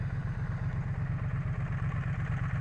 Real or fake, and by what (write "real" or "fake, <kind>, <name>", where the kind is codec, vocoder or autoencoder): real